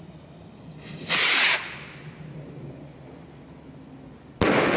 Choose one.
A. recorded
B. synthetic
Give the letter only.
A